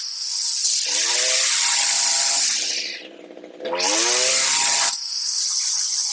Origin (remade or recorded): remade